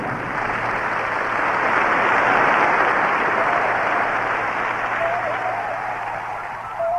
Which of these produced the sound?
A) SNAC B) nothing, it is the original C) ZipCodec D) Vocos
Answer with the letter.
B